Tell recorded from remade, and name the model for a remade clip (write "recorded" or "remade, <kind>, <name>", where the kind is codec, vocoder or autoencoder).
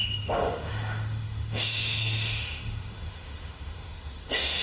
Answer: remade, autoencoder, DAC-VAE